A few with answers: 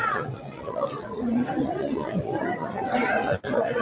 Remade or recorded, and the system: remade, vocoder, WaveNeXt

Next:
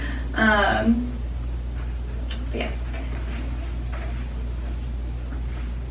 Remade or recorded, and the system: recorded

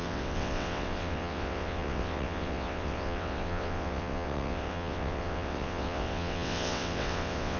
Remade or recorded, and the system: remade, vocoder, WaveNeXt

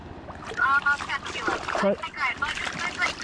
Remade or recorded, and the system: recorded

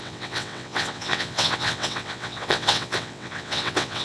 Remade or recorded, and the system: remade, vocoder, WaveNeXt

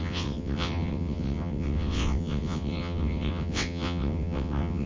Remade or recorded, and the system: remade, vocoder, WaveNeXt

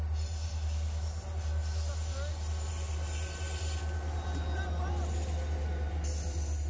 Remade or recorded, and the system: recorded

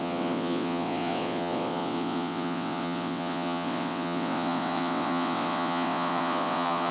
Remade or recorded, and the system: remade, vocoder, WaveNeXt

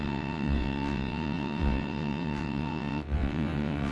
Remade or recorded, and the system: remade, vocoder, WaveNeXt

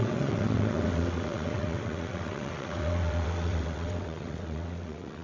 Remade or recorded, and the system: remade, vocoder, WaveNeXt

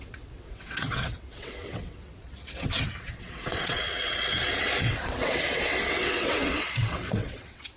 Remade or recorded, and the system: remade, vocoder, WaveNeXt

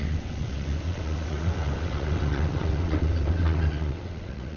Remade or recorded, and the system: remade, vocoder, WaveNeXt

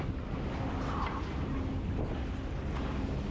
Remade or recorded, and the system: recorded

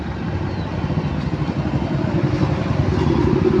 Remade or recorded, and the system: recorded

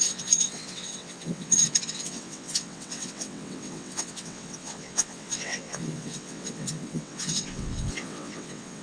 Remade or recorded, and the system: remade, vocoder, WaveNeXt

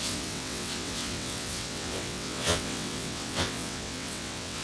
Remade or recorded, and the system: remade, vocoder, WaveNeXt